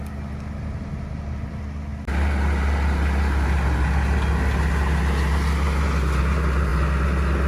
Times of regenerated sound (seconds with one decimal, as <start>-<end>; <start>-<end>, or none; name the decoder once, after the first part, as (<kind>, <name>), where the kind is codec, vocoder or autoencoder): none